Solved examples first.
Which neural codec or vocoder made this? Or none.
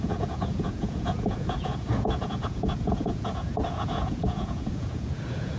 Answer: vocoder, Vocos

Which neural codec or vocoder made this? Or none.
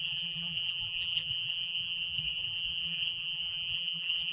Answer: vocoder, BigVGAN v2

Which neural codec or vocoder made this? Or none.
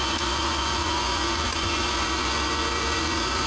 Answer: vocoder, Vocos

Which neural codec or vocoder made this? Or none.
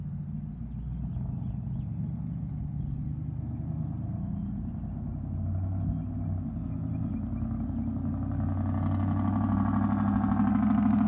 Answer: none